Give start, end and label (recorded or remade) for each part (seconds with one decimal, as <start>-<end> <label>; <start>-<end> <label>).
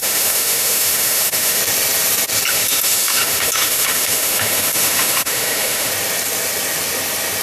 0.0-1.6 remade; 1.6-2.5 recorded; 2.5-5.9 remade; 5.9-7.4 recorded